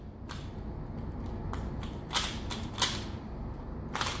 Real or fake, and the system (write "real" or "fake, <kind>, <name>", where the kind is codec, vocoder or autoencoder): real